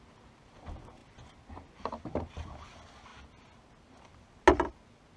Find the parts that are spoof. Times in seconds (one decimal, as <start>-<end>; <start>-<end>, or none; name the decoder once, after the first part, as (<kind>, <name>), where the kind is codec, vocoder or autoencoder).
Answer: none